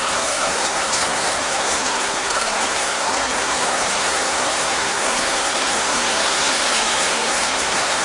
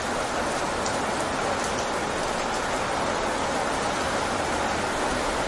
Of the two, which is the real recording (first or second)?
second